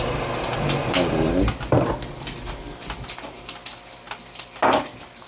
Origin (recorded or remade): recorded